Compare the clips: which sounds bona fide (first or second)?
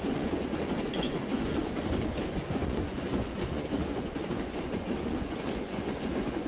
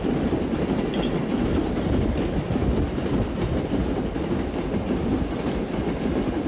second